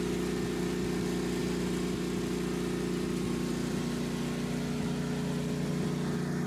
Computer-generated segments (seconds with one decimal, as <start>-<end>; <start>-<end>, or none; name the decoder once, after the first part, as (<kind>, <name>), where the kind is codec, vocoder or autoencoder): none